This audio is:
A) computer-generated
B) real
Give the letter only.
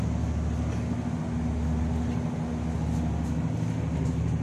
B